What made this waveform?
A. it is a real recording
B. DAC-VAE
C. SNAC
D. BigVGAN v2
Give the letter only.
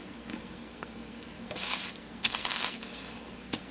C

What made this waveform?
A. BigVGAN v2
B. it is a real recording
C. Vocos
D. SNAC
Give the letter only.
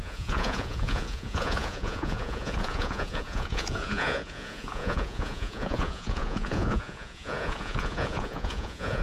C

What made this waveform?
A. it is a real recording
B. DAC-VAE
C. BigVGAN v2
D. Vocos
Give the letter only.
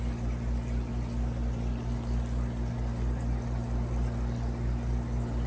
A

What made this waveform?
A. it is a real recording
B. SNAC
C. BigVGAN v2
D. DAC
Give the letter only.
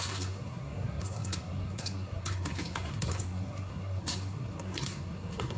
B